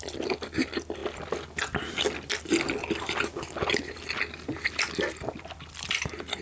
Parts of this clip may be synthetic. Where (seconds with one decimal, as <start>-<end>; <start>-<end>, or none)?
0.0-1.0; 4.2-6.4